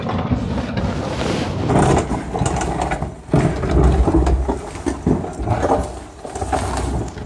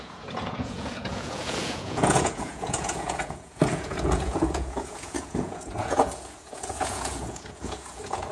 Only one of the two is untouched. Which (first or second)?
first